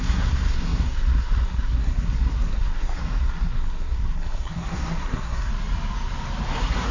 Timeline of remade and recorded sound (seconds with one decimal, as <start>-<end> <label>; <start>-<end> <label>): 0.0-5.5 remade; 5.5-6.5 recorded; 6.5-6.9 remade